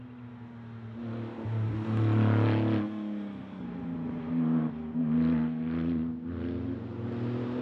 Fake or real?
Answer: real